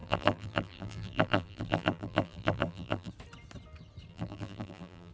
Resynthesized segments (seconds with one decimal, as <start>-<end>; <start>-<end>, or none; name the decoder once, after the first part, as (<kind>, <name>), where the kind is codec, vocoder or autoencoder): 0.0-3.1 (vocoder, BigVGAN v2); 4.1-5.1